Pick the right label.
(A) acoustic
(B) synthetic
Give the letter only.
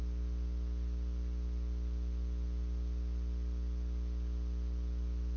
A